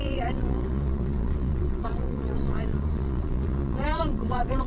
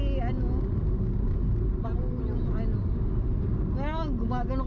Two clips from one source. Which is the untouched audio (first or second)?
second